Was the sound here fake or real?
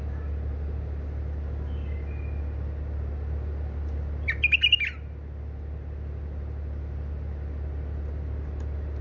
real